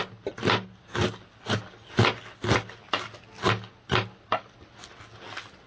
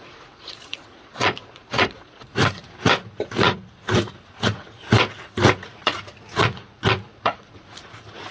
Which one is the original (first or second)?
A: first